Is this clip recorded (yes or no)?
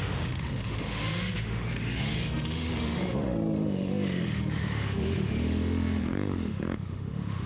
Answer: no